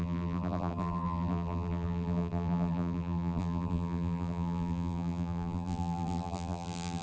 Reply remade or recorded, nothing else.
remade